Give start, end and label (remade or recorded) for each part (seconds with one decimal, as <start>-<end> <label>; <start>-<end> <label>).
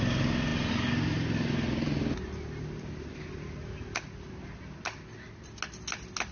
0.0-6.3 recorded